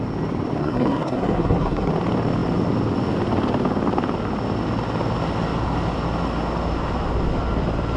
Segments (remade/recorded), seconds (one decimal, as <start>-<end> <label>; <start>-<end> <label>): 0.0-0.6 recorded; 0.6-1.9 remade; 1.9-8.0 recorded